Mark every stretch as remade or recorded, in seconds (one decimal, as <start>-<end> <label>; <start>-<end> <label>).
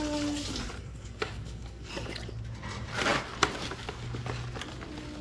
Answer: 0.0-0.8 recorded; 0.8-1.9 remade; 1.9-5.2 recorded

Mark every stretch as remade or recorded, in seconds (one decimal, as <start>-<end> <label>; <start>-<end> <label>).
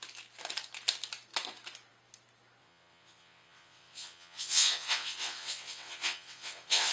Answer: 0.0-2.6 recorded; 2.6-6.9 remade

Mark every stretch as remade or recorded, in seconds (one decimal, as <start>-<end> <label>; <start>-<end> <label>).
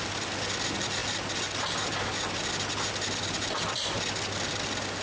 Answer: 0.0-5.0 recorded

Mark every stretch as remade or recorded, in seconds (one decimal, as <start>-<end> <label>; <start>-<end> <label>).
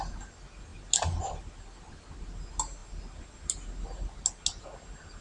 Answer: 0.0-5.2 recorded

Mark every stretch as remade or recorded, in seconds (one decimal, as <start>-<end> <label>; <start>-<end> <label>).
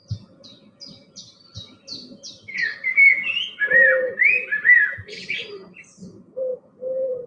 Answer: 0.0-6.5 recorded; 6.5-7.3 remade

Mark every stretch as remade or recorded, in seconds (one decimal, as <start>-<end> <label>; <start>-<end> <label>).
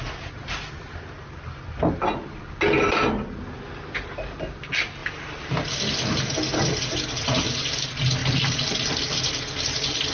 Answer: 0.0-10.1 recorded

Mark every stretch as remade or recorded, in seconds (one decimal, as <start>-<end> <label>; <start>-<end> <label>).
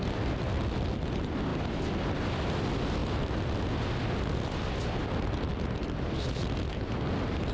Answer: 0.0-7.5 recorded